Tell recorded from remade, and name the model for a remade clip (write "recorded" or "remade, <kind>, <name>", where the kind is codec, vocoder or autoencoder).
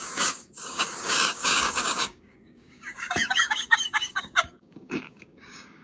remade, codec, DAC